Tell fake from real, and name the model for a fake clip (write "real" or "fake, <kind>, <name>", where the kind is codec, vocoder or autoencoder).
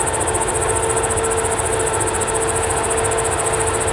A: real